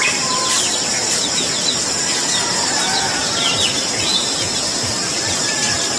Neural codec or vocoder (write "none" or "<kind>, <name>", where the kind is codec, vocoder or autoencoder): vocoder, BigVGAN v2